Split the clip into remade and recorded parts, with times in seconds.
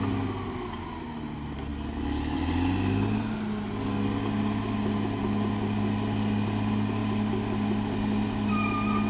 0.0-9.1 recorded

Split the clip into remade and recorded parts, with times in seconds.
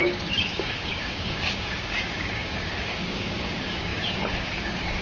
0.0-5.0 remade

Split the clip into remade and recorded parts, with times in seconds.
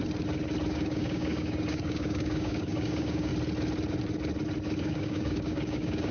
0.0-0.7 recorded; 0.7-3.3 remade; 3.3-4.8 recorded; 4.8-6.1 remade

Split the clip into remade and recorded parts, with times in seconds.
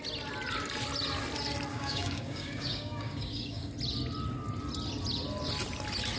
0.0-1.7 recorded; 1.7-3.7 remade; 3.7-6.2 recorded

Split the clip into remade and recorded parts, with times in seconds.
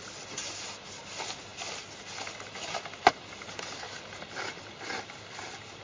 0.0-5.8 recorded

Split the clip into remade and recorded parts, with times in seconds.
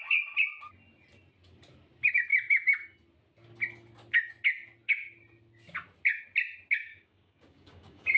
0.0-6.9 recorded; 6.9-8.2 remade